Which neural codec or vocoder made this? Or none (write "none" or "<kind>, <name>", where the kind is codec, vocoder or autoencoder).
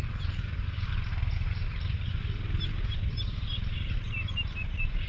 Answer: vocoder, BigVGAN v2